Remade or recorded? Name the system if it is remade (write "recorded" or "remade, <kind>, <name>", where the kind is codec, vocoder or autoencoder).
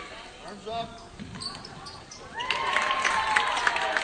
recorded